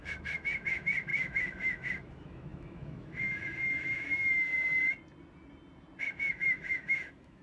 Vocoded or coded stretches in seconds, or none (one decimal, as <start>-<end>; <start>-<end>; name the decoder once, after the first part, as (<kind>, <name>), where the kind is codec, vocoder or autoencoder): 0.0-4.8 (autoencoder, DAC-VAE); 6.0-7.4